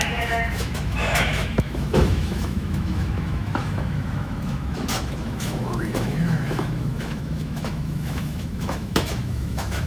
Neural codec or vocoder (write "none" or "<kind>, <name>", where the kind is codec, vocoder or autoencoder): autoencoder, DAC-VAE